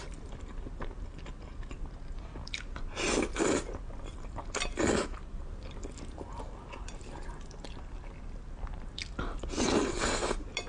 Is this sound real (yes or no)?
yes